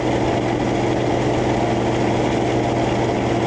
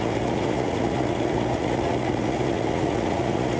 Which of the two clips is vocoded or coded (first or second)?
second